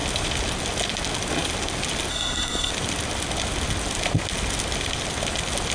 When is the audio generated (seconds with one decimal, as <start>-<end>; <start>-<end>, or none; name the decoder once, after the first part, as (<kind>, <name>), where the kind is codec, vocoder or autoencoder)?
2.1-2.7 (codec, SNAC)